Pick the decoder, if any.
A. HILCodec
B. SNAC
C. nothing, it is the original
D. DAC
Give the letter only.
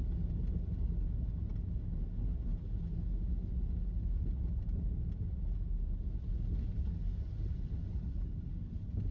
C